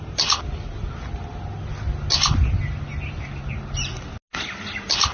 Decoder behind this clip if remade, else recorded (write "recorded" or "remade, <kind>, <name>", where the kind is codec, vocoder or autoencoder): recorded